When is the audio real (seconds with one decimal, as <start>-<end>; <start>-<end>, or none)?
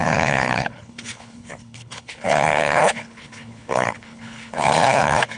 none